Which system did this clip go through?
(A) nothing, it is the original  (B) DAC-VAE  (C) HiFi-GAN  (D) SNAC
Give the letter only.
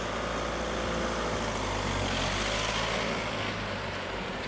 A